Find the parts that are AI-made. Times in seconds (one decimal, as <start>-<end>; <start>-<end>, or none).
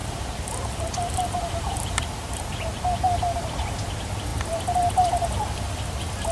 0.0-2.1